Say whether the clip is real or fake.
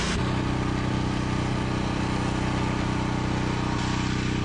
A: real